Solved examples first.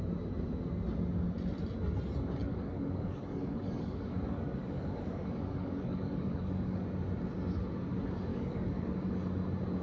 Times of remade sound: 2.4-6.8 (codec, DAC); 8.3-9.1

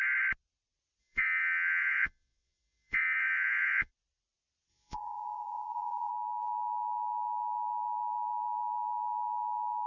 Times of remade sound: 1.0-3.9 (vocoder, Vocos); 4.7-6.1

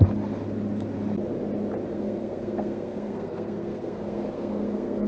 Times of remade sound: 1.9-5.1 (codec, SNAC)